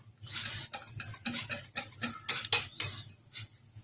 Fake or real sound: real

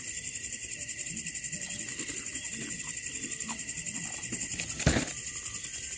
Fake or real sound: real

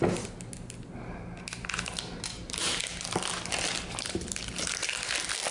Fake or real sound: real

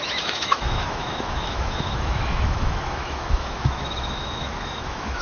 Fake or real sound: fake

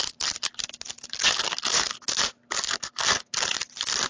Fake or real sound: real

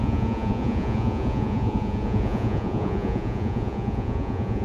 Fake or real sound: fake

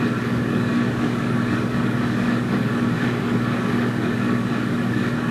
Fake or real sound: fake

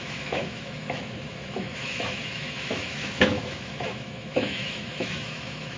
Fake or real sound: fake